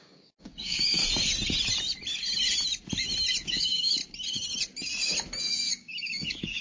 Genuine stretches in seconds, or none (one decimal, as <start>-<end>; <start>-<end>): 1.0-3.4; 4.0-5.4